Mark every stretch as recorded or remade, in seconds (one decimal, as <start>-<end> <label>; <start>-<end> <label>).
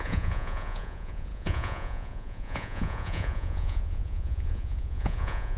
0.0-5.6 remade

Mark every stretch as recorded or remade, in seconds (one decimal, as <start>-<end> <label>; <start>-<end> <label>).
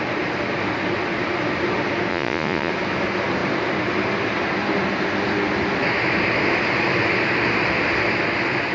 0.0-2.1 recorded; 2.1-2.7 remade; 2.7-8.7 recorded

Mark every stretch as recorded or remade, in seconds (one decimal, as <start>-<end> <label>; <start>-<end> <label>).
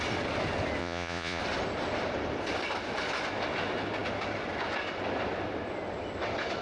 0.0-0.8 recorded; 0.8-1.4 remade; 1.4-6.6 recorded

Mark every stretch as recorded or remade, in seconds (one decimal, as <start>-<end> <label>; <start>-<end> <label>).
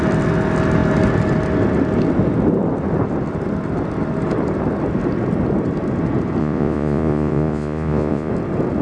0.0-6.4 recorded; 6.4-8.3 remade; 8.3-8.8 recorded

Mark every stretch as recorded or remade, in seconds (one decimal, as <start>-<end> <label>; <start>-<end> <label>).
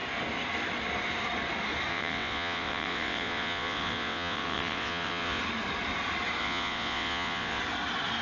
0.0-1.9 recorded; 1.9-5.4 remade; 5.4-6.4 recorded; 6.4-7.6 remade; 7.6-8.2 recorded